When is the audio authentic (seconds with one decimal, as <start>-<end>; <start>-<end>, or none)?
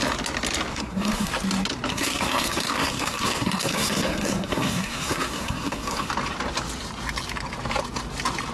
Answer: 0.0-0.7; 1.3-1.9; 6.1-8.5